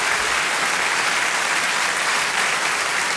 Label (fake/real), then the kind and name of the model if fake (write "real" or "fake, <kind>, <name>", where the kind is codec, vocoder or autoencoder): real